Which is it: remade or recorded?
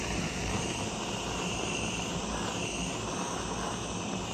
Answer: recorded